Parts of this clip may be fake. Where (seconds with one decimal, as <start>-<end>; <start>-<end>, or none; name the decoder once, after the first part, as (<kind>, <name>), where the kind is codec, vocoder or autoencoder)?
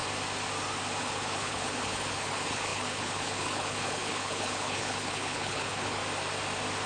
1.0-6.0 (codec, HILCodec)